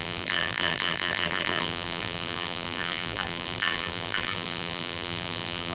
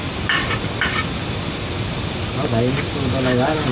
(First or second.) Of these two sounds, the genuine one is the second